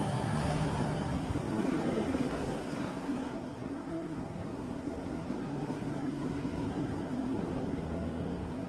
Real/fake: fake